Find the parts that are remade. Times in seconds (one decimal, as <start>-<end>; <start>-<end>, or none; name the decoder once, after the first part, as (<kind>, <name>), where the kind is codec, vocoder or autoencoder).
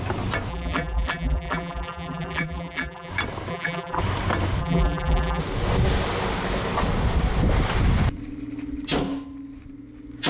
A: 0.5-3.1 (vocoder, BigVGAN v2); 3.5-4.0; 4.6-5.4